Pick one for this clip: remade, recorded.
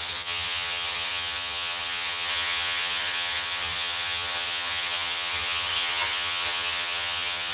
remade